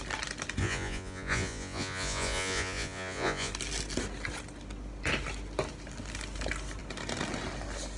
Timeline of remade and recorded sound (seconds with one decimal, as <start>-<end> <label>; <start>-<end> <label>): 0.0-0.6 recorded; 0.6-3.5 remade; 3.5-8.0 recorded